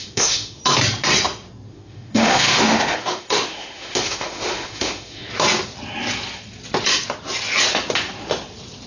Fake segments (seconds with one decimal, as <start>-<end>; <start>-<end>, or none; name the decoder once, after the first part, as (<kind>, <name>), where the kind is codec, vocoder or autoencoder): 0.0-0.6 (autoencoder, DAC-VAE); 1.7-5.3